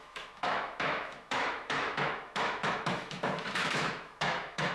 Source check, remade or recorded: remade